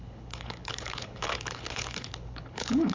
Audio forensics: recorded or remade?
remade